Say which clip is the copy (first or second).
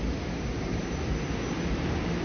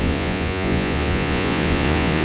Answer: second